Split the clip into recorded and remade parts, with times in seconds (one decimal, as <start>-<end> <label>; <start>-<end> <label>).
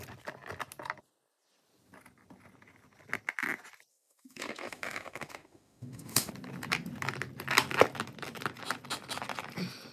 0.0-3.9 recorded; 3.9-6.3 remade; 6.3-9.9 recorded